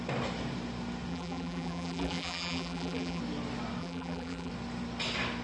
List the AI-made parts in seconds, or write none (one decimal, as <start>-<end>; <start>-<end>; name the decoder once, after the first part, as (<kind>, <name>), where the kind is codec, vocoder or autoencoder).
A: 1.1-3.2 (vocoder, BigVGAN v2); 3.8-4.5